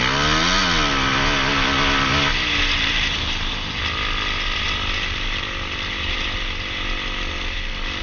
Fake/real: real